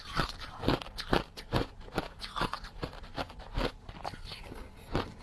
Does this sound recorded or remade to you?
recorded